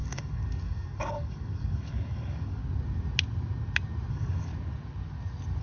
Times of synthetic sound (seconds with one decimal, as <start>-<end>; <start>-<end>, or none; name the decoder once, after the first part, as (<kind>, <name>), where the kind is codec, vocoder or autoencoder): 0.0-2.6 (codec, DAC); 4.1-4.5